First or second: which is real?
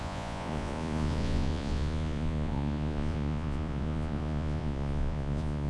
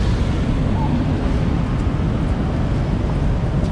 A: second